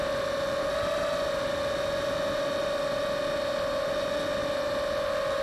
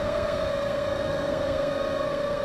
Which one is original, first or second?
first